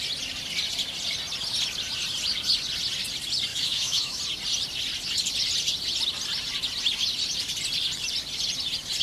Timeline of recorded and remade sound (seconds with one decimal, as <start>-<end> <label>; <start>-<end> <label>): 0.0-3.5 recorded; 3.5-4.2 remade; 4.2-9.0 recorded